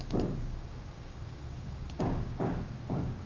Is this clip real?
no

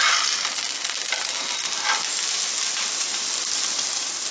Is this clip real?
yes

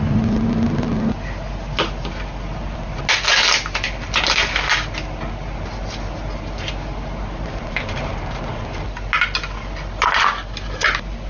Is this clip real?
yes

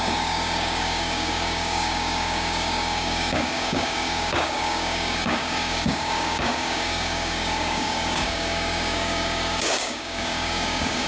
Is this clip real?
no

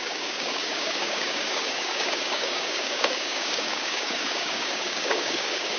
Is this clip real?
no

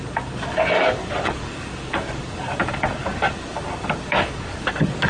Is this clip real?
no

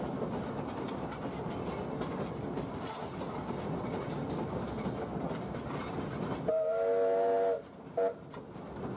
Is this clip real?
yes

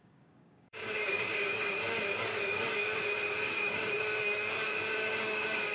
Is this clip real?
no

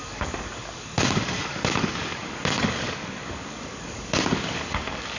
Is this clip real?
no